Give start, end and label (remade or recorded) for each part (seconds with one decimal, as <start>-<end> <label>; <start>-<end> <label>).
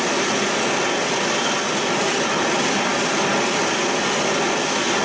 0.0-5.0 recorded